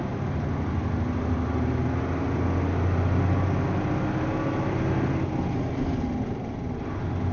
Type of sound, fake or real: real